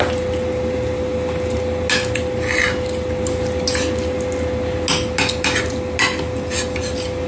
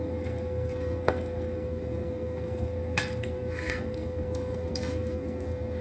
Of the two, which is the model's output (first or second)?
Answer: second